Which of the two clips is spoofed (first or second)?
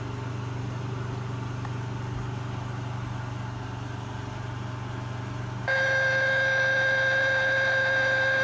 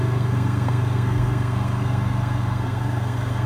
second